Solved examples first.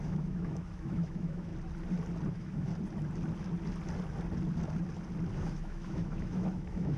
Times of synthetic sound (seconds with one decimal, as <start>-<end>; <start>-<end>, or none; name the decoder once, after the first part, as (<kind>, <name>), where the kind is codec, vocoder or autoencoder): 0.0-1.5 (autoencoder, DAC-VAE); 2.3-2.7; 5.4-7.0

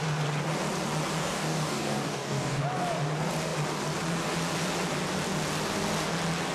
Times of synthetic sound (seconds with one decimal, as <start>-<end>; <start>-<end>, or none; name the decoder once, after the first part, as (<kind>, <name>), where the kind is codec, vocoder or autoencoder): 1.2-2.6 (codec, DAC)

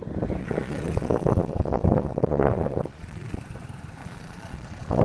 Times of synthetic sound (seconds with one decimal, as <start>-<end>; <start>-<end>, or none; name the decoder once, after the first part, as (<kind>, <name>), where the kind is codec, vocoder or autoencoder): 0.4-3.4 (vocoder, Vocos); 4.0-5.0